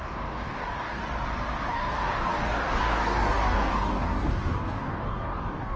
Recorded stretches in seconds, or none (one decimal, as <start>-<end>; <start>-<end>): 1.0-1.7